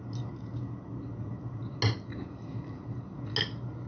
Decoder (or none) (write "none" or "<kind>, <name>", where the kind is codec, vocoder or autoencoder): none